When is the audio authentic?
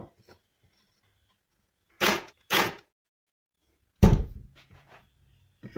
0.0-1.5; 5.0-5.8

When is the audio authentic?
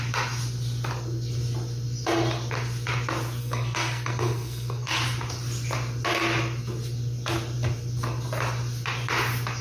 0.0-3.4; 5.0-9.6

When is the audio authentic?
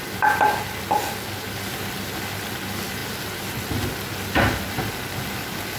0.0-5.8